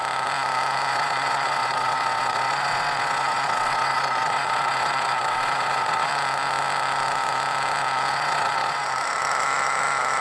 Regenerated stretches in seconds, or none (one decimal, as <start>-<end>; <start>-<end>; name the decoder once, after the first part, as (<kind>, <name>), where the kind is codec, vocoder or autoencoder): 0.9-6.1 (vocoder, WaveNeXt); 8.1-8.8